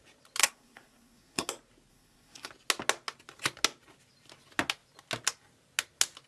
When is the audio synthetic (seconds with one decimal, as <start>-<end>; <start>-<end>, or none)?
0.4-1.5; 1.9-2.5